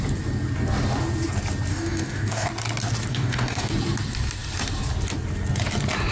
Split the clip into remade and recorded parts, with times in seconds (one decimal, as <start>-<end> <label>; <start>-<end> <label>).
0.0-1.7 recorded; 1.7-2.5 remade; 2.5-3.1 recorded; 3.1-3.7 remade; 3.7-6.1 recorded